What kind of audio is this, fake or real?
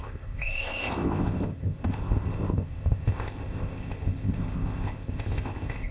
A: fake